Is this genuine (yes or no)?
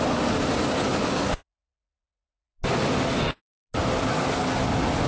yes